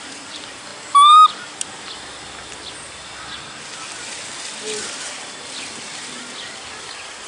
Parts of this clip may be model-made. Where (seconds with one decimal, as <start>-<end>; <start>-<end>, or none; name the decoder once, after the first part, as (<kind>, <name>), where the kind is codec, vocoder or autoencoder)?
none